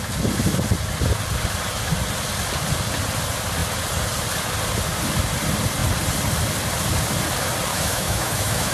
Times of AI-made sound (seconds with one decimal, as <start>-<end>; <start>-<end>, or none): 7.7-8.7